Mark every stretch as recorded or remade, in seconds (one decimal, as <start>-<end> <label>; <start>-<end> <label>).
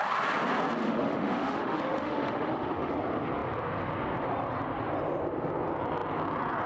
0.0-0.8 recorded; 0.8-2.9 remade; 2.9-6.7 recorded